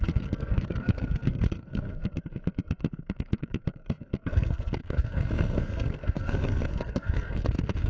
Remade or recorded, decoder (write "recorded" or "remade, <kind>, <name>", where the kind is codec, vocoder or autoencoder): remade, codec, SNAC